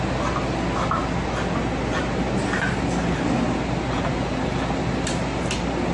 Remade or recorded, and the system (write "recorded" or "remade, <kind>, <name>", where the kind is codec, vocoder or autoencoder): recorded